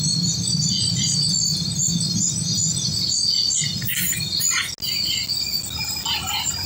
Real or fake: real